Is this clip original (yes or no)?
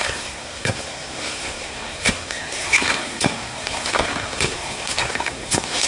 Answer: no